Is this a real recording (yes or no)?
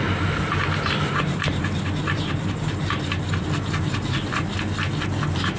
yes